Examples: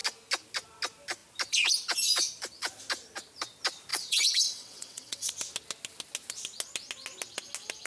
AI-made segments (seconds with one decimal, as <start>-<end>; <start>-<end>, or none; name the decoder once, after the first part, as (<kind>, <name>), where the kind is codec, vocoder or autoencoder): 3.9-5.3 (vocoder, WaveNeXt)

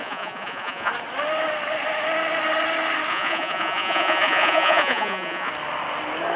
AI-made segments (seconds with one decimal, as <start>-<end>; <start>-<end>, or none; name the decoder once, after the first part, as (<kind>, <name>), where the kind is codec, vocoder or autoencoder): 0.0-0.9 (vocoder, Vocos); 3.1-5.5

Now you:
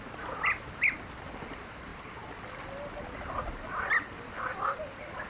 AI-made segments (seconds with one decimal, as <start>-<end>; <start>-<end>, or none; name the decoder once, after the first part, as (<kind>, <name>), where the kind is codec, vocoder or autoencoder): none

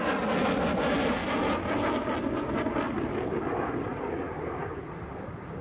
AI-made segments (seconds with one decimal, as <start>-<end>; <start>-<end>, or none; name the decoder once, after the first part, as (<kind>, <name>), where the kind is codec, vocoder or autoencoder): none

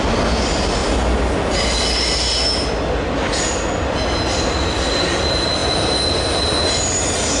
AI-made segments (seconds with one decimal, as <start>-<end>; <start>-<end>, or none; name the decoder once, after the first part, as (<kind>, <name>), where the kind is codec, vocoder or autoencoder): none